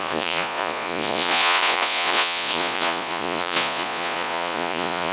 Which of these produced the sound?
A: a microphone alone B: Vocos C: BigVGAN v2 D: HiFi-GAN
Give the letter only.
B